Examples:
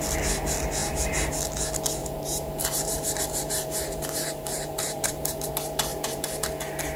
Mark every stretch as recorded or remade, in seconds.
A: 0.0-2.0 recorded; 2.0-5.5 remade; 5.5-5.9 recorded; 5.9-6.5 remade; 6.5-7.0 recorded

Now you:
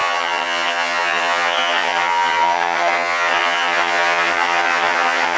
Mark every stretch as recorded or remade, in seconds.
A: 0.0-5.4 remade

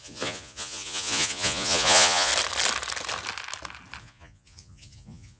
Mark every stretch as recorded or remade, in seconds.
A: 0.0-2.3 remade; 2.3-4.0 recorded; 4.0-5.4 remade

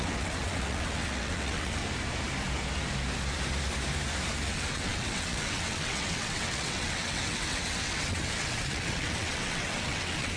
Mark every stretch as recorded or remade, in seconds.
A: 0.0-1.8 remade; 1.8-4.5 recorded; 4.5-10.4 remade